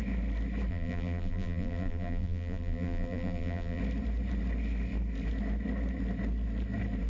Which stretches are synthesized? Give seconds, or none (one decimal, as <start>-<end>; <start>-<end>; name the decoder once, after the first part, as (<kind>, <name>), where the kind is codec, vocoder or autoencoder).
0.7-3.8 (vocoder, BigVGAN v2)